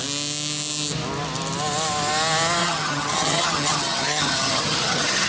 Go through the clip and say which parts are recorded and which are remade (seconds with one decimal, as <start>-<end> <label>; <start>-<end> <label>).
0.0-2.6 recorded; 2.6-5.3 remade